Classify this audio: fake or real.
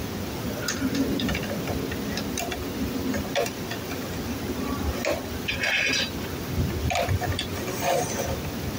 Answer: real